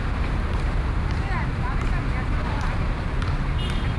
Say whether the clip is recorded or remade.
recorded